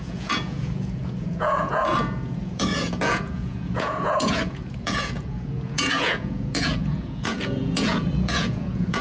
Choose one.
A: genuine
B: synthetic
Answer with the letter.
B